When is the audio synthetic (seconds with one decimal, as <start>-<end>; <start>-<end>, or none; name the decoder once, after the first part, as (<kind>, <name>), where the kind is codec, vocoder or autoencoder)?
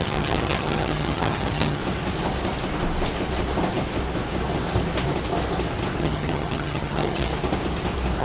0.0-1.8 (vocoder, HiFi-GAN); 6.0-7.3